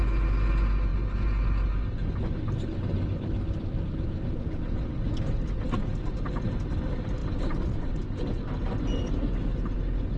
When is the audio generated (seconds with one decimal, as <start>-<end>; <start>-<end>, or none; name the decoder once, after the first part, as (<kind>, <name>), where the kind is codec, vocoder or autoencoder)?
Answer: none